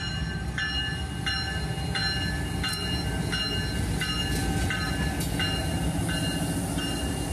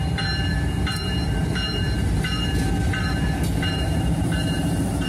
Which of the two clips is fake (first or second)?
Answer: second